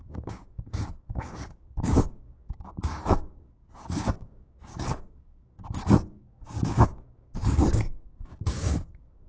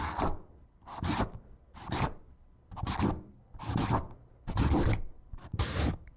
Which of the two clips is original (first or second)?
second